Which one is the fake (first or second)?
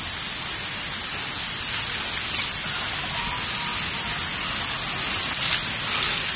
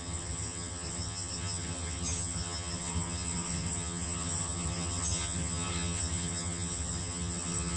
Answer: second